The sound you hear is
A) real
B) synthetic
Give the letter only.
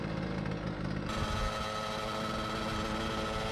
A